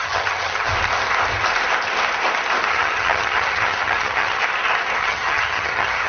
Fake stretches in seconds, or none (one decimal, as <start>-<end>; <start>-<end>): 0.0-0.7; 2.7-4.4; 5.0-6.1

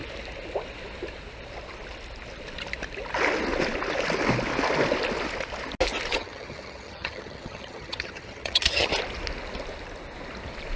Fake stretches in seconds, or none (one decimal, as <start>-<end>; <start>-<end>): 6.2-8.9

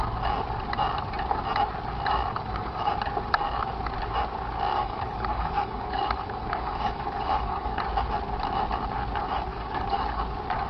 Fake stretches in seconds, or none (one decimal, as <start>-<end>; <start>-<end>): 2.3-2.9; 4.7-7.8; 9.5-10.2

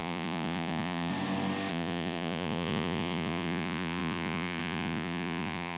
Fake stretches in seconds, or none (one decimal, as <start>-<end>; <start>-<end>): 0.0-1.1; 1.7-5.8